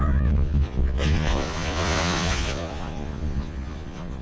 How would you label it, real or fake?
fake